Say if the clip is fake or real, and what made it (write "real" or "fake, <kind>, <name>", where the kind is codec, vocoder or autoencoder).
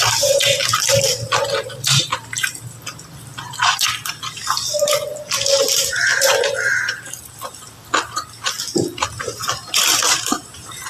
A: fake, vocoder, BigVGAN v2